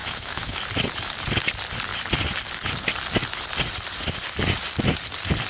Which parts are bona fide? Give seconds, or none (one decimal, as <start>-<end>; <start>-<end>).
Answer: 0.6-5.5